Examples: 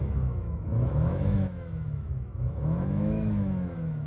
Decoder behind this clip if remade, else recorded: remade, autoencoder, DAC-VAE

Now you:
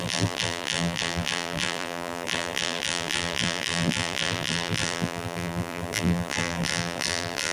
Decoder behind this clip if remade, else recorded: remade, vocoder, BigVGAN v2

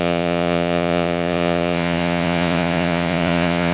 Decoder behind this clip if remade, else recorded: remade, vocoder, Vocos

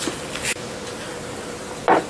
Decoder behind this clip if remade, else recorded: recorded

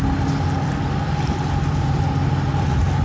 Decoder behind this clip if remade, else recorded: recorded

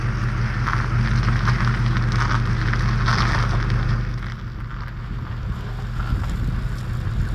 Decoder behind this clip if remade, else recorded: recorded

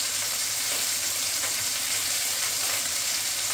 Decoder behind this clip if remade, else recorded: remade, vocoder, BigVGAN v2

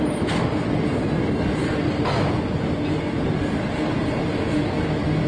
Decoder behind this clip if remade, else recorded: recorded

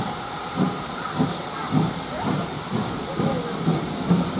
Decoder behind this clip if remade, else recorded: recorded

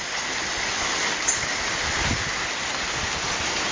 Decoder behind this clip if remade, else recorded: recorded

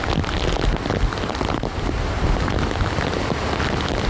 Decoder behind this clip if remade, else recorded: recorded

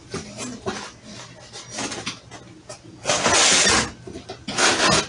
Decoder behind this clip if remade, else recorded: recorded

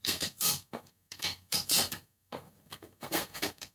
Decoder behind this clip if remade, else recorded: remade, codec, SNAC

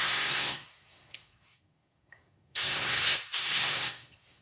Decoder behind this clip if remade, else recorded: remade, codec, SNAC